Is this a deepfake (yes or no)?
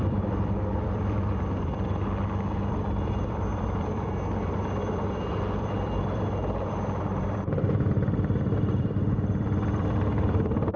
yes